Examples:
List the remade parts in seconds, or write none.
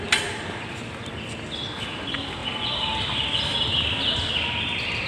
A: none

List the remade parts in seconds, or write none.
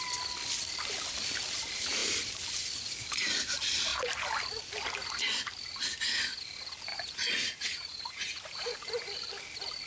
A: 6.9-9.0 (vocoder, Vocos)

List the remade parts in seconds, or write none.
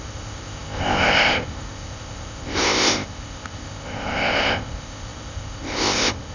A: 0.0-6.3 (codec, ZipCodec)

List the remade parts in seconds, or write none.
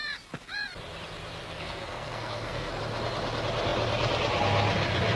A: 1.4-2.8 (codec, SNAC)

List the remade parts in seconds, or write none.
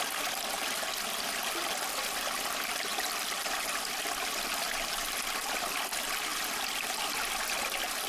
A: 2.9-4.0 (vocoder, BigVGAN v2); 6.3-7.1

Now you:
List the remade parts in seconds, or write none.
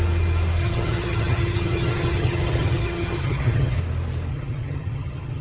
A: 0.6-3.8 (vocoder, HiFi-GAN); 4.3-5.4